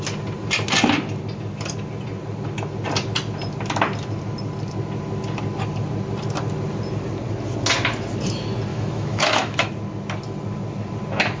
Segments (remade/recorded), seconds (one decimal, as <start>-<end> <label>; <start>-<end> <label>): 0.0-8.7 recorded; 8.7-9.7 remade; 9.7-11.4 recorded